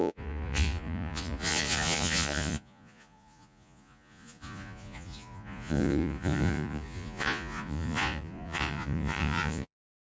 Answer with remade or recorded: remade